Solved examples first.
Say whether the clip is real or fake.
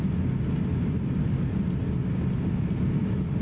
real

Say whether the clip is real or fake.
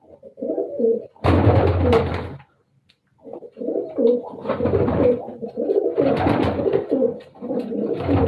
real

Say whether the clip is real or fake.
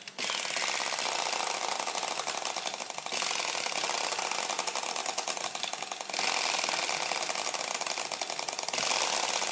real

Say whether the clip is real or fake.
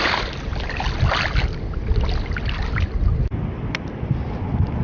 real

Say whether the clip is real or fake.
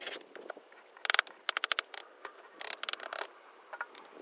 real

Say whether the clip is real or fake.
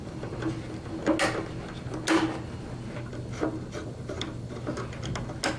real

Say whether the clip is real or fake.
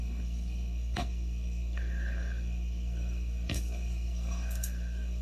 fake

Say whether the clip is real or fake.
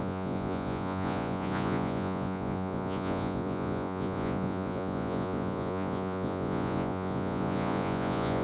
fake